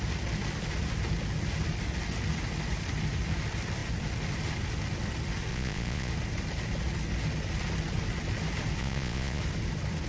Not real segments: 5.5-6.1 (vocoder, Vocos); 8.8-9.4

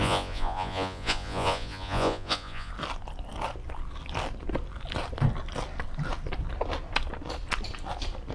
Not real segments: 0.0-2.7 (vocoder, Vocos)

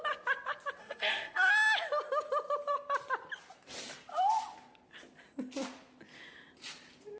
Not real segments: 0.8-1.5 (codec, SNAC)

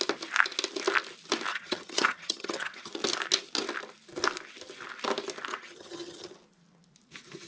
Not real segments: 1.5-2.9 (vocoder, HiFi-GAN); 5.5-6.3

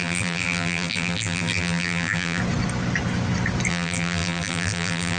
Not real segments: 0.0-2.4 (vocoder, BigVGAN v2); 3.7-5.2

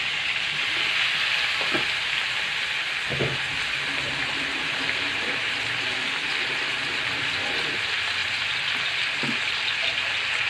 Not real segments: none

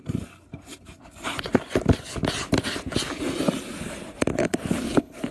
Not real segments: 4.3-5.3 (codec, HILCodec)